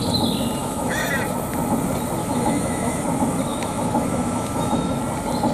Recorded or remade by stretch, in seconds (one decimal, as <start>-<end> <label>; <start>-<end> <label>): 0.0-0.6 recorded; 0.6-1.1 remade; 1.1-2.2 recorded; 2.2-3.0 remade; 3.0-3.5 recorded; 3.5-5.0 remade; 5.0-5.5 recorded